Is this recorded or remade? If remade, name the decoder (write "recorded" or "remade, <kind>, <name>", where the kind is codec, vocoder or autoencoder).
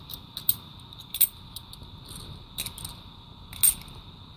recorded